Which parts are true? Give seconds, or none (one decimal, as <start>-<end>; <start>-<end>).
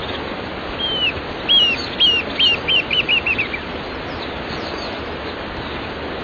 0.0-6.2